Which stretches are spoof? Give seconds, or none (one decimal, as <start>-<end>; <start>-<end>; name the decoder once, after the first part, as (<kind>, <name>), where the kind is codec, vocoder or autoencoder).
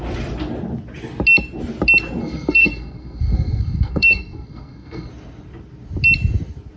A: 2.2-5.1 (codec, SNAC)